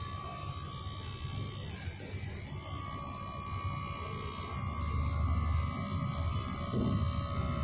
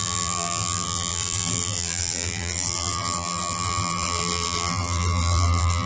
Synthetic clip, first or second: second